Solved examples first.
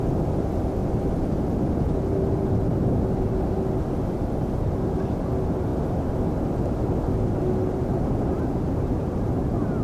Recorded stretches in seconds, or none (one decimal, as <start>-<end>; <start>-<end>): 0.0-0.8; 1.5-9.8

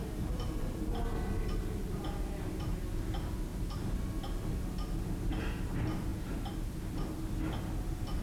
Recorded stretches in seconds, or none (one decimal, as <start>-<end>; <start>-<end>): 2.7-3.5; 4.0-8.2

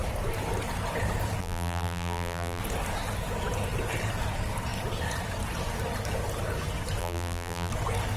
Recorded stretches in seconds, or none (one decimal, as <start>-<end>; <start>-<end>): 0.0-1.4; 2.6-7.0; 7.7-8.2

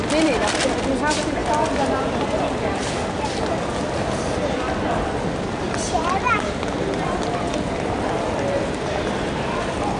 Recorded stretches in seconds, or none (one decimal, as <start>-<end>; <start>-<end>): 0.0-10.0

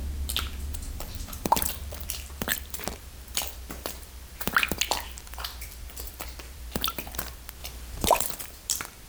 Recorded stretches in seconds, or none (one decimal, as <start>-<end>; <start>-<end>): 0.0-1.7; 2.5-3.1; 7.6-8.2

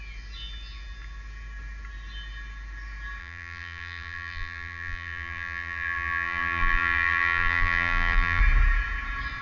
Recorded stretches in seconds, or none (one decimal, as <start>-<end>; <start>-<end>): 0.0-3.2; 8.4-9.4